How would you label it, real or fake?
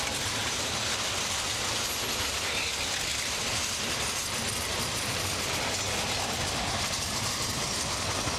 real